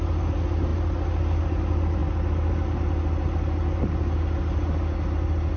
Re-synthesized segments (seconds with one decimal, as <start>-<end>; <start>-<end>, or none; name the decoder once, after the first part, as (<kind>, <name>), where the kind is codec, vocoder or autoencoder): none